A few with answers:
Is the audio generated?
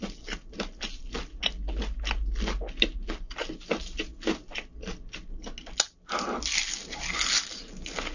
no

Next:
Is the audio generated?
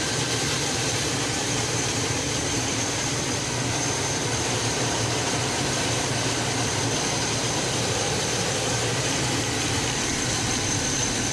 yes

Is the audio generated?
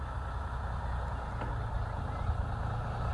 no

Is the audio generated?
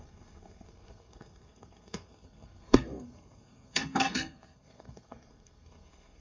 yes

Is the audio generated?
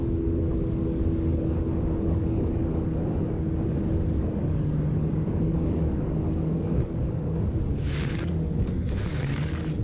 yes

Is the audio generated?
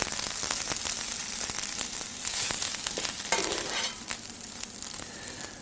no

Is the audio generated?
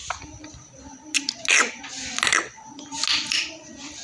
no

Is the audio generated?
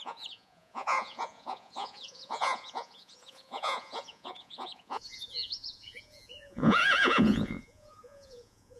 yes